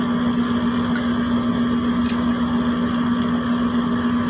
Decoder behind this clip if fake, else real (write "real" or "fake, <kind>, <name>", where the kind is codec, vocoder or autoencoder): real